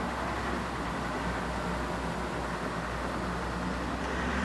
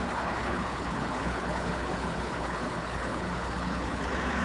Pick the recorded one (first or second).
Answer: first